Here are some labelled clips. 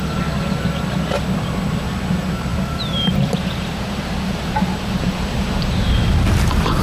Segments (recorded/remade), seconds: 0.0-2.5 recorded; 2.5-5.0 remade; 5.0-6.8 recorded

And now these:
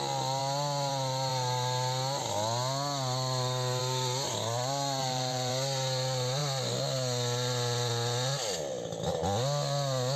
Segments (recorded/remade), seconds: 0.0-5.0 recorded; 5.0-5.5 remade; 5.5-10.2 recorded